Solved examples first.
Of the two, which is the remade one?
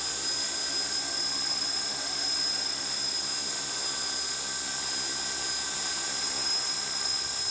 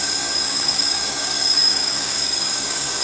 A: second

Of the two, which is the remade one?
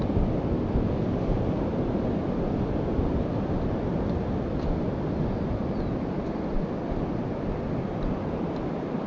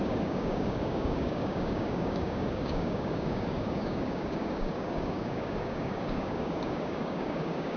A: second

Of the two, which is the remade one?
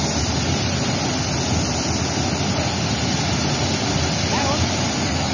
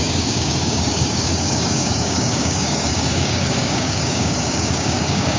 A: second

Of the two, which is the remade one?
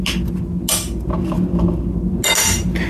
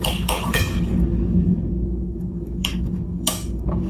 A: second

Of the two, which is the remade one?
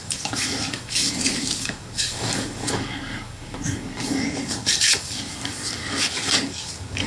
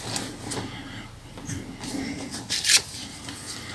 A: first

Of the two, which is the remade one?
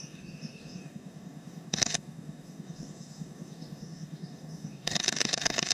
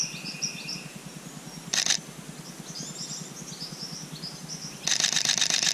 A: first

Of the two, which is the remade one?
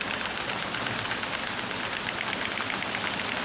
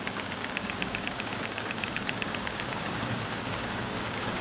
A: second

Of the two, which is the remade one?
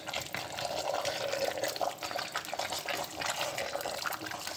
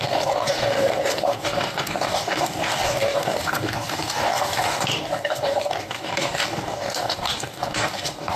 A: second